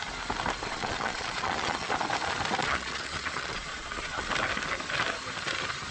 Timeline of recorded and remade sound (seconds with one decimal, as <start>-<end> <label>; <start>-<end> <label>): 0.0-0.7 recorded; 0.7-1.9 remade; 1.9-2.6 recorded; 2.6-4.3 remade; 4.3-5.9 recorded

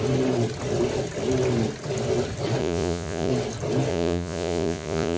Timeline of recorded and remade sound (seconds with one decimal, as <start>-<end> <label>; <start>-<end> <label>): 0.0-2.6 recorded; 2.6-3.3 remade; 3.3-3.9 recorded; 3.9-5.2 remade

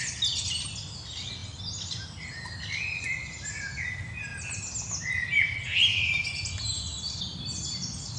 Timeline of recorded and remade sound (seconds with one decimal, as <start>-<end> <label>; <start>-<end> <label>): 0.0-8.2 recorded

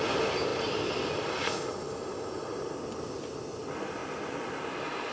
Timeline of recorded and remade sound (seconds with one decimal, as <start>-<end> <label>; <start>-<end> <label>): 0.0-5.1 recorded